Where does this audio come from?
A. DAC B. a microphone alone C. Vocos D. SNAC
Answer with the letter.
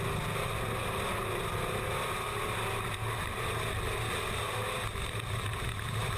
B